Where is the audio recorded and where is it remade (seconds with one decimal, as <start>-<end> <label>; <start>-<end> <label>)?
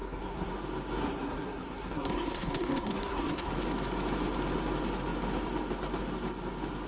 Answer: 0.0-0.5 remade; 0.5-1.0 recorded; 1.0-3.5 remade; 3.5-6.9 recorded